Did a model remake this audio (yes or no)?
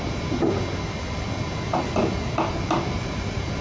no